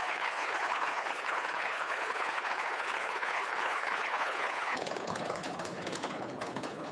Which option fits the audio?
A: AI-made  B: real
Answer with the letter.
A